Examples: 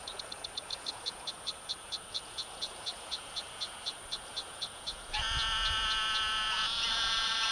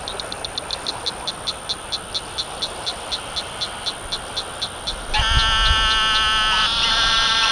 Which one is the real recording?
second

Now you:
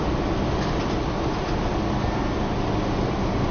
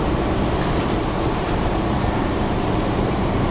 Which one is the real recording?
first